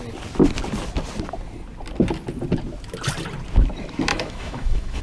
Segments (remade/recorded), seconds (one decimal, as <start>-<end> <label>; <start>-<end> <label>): 0.0-4.1 recorded; 4.1-5.0 remade